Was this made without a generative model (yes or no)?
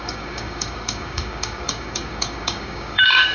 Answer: no